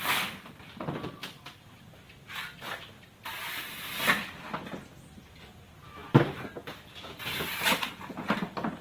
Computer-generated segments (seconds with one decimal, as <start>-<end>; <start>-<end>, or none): none